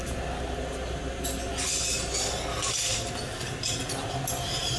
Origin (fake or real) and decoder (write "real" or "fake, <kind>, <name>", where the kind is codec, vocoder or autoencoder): real